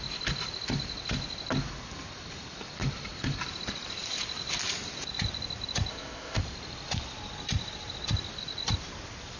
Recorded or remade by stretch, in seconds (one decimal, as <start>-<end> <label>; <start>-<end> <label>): 0.0-5.9 recorded; 5.9-6.4 remade; 6.4-9.4 recorded